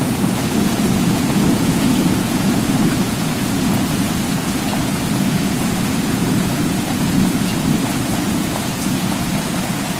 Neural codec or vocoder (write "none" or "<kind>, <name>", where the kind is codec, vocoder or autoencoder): vocoder, Vocos